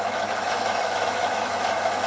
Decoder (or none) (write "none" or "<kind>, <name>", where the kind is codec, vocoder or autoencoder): autoencoder, DAC-VAE